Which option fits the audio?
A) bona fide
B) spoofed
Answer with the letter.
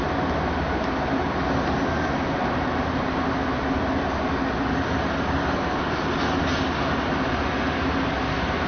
A